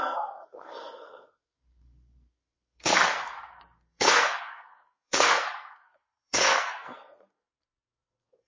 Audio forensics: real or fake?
fake